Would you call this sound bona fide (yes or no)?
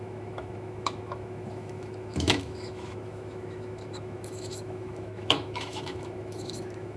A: no